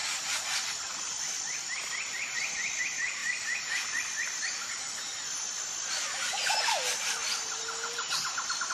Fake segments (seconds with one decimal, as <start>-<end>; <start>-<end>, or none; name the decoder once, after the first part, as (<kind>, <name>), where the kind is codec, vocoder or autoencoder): 0.0-2.8 (vocoder, BigVGAN v2)